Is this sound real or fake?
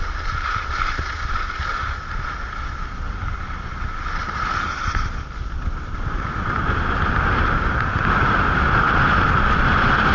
real